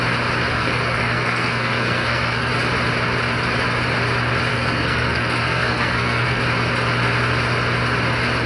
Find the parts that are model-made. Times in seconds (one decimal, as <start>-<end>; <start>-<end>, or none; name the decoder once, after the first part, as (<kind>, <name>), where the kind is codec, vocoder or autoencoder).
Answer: 0.5-2.5 (codec, SNAC); 4.5-6.4